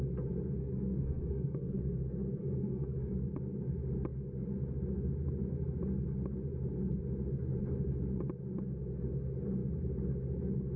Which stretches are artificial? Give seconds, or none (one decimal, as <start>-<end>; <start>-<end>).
0.6-1.8; 2.4-3.1